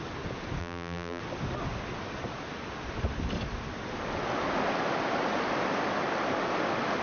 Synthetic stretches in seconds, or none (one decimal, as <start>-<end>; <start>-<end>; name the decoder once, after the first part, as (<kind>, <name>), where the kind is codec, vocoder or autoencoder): 0.6-1.2 (vocoder, BigVGAN v2)